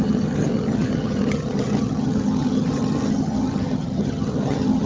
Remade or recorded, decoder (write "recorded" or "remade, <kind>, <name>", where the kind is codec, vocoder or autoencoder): remade, vocoder, HiFi-GAN